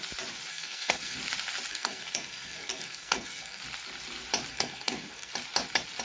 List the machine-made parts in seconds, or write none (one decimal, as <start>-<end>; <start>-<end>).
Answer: 0.5-1.2; 1.7-3.6; 4.5-5.3

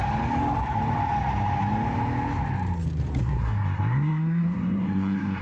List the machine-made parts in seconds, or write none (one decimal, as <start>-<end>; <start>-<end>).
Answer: 3.2-5.4

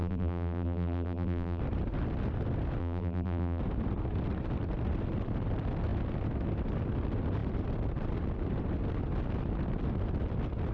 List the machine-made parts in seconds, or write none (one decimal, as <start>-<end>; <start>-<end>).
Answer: 0.0-1.6; 2.8-3.6

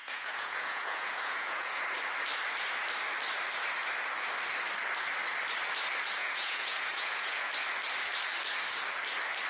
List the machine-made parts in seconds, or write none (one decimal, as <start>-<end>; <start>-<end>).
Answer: 0.0-1.8; 6.2-7.5

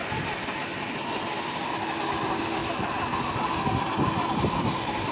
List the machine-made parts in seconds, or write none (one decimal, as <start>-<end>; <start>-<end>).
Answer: 1.7-2.6; 3.8-5.1